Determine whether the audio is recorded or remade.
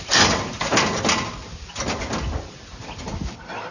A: recorded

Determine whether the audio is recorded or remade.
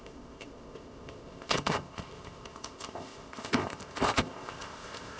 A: remade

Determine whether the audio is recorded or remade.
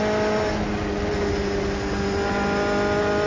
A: recorded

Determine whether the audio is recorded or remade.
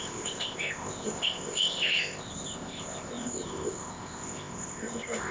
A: remade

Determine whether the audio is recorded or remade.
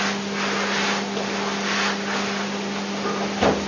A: recorded